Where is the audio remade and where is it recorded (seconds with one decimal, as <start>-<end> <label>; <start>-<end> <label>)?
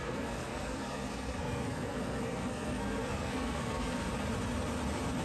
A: 0.0-4.1 remade; 4.1-5.2 recorded